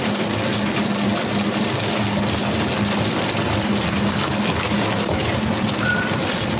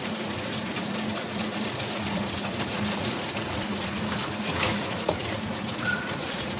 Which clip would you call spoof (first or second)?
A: second